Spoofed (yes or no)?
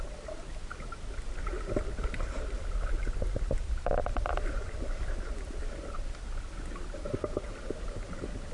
no